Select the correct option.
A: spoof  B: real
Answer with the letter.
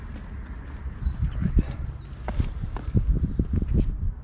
B